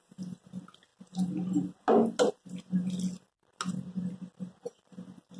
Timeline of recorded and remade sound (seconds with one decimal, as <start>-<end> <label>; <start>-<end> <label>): 0.0-5.4 recorded